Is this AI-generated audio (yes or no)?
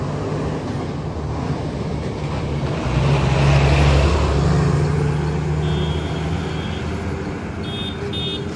no